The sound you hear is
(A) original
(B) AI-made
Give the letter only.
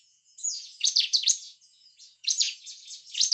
B